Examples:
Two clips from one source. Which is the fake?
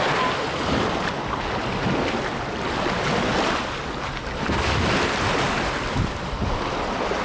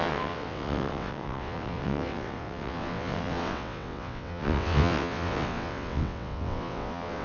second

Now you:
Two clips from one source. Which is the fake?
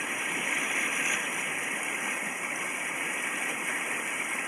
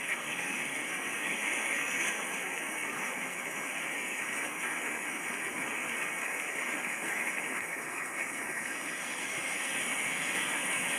second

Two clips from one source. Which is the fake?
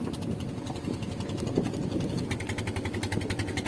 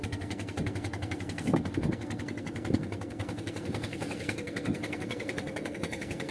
second